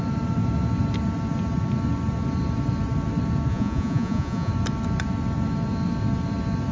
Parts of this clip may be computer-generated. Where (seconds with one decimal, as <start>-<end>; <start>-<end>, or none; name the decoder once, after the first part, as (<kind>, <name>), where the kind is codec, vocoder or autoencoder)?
3.5-4.5 (vocoder, Vocos)